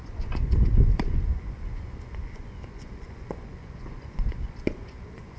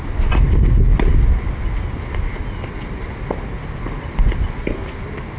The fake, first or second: first